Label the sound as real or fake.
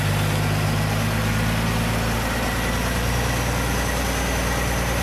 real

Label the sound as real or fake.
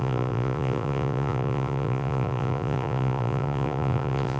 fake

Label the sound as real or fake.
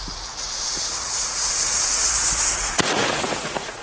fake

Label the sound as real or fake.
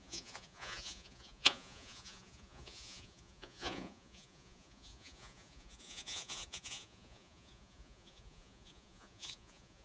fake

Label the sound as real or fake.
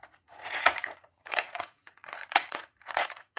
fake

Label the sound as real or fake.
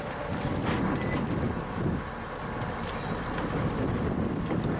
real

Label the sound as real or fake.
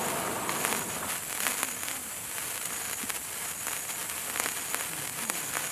real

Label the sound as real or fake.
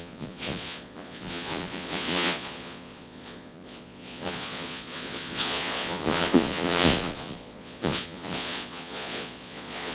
fake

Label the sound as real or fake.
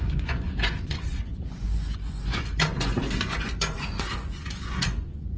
fake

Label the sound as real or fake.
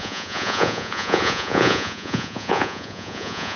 fake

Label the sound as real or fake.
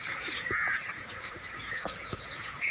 fake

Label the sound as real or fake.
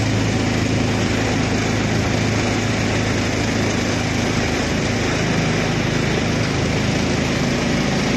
real